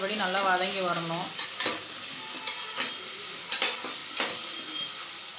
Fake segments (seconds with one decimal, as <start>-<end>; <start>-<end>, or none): 1.7-2.4